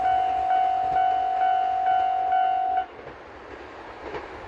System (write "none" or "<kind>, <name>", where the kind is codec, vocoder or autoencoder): none